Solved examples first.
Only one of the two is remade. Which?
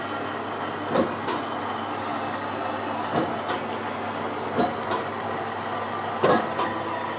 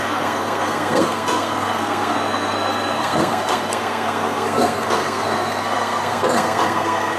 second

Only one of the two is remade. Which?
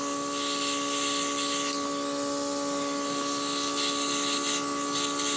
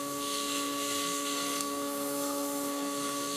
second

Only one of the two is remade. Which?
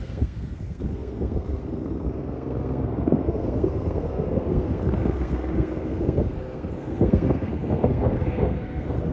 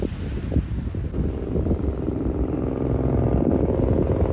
first